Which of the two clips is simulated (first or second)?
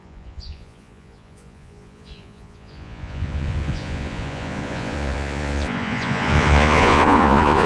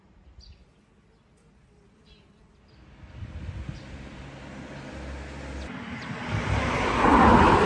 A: first